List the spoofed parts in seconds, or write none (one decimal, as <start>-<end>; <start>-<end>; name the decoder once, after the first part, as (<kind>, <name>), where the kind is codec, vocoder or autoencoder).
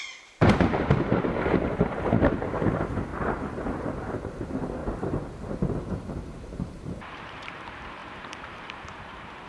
0.0-3.1 (vocoder, BigVGAN v2); 4.0-4.8; 5.8-9.5